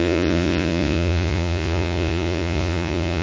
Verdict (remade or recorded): remade